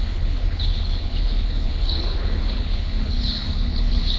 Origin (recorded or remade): remade